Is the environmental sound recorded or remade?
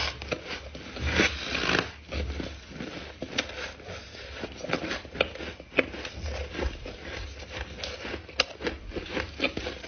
recorded